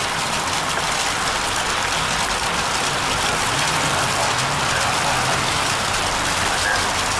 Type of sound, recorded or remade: recorded